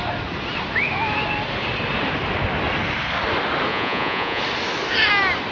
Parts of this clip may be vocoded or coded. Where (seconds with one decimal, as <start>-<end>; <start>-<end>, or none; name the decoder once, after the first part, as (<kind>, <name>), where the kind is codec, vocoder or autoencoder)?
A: 3.7-4.4 (vocoder, Vocos)